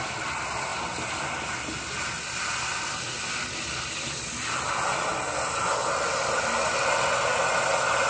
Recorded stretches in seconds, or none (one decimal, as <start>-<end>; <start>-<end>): 0.0-8.1